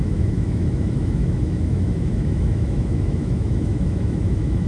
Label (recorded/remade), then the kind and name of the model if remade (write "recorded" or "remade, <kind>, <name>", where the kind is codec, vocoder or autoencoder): remade, autoencoder, DAC-VAE